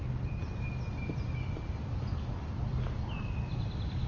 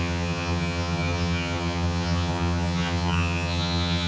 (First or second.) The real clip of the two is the first